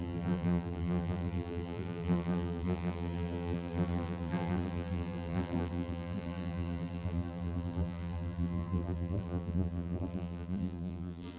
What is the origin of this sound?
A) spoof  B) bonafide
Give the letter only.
A